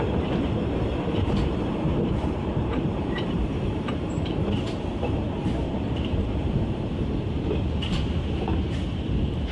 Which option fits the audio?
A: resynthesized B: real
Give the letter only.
A